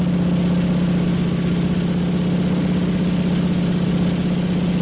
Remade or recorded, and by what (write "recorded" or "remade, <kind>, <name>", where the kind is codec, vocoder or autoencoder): recorded